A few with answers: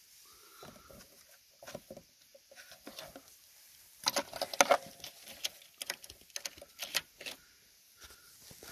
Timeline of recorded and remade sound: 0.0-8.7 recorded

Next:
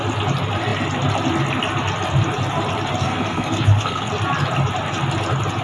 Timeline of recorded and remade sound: 0.0-3.0 recorded; 3.0-4.1 remade; 4.1-5.6 recorded

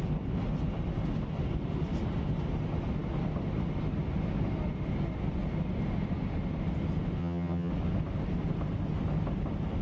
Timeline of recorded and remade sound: 0.0-7.2 recorded; 7.2-7.7 remade; 7.7-9.8 recorded

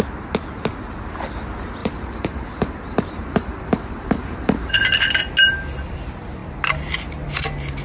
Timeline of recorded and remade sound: 0.0-1.8 recorded; 1.8-4.7 remade; 4.7-7.8 recorded

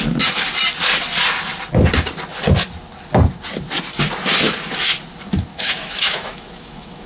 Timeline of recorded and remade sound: 0.0-5.5 recorded; 5.5-7.1 remade

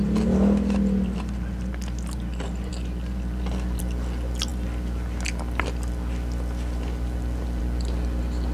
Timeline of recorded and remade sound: 0.0-8.5 recorded

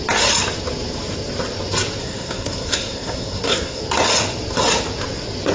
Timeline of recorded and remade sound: 0.0-2.0 recorded; 2.0-3.8 remade; 3.8-5.5 recorded

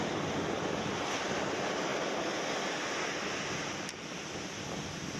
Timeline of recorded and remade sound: 0.0-5.2 recorded